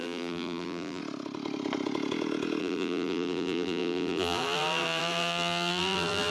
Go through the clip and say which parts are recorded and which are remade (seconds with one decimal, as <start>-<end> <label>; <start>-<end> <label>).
0.0-1.0 remade; 1.0-2.6 recorded; 2.6-6.3 remade